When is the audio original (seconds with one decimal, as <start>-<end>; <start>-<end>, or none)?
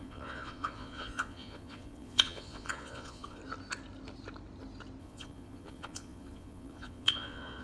3.4-5.0